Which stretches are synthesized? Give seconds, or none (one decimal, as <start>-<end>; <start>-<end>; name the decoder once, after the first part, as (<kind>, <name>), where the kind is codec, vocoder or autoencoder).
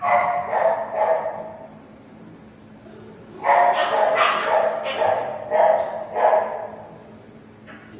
none